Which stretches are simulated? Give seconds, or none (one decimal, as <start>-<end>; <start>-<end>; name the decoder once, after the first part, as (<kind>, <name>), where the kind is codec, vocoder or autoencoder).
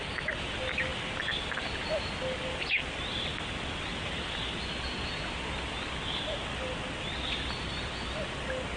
none